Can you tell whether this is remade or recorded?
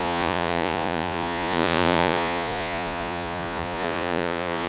remade